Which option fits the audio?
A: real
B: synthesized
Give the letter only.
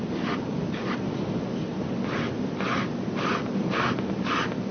A